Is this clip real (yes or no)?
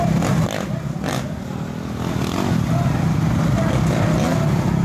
yes